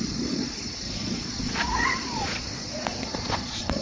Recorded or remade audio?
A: remade